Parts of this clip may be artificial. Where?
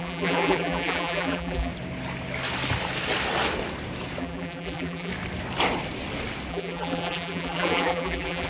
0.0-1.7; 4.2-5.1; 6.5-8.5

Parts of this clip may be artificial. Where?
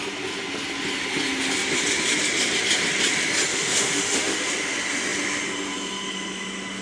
3.5-4.5